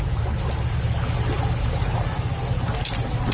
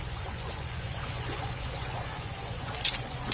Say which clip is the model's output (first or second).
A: second